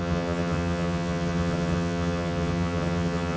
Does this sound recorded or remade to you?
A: remade